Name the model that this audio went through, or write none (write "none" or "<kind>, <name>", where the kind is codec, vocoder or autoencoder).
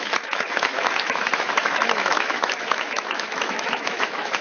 autoencoder, DAC-VAE